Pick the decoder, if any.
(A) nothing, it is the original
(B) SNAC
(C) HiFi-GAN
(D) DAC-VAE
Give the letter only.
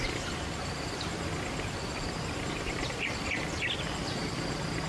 A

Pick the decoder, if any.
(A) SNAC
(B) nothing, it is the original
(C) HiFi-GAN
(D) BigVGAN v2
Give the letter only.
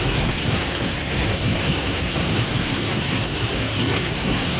A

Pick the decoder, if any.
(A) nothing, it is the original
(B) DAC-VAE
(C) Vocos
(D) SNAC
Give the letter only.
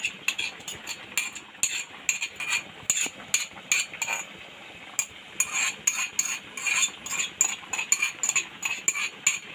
A